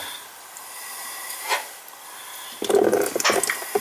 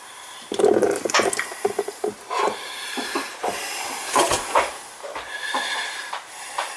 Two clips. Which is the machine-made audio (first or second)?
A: second